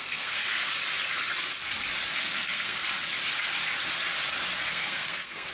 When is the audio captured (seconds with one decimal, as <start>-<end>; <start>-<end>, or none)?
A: 0.6-2.2; 2.9-4.6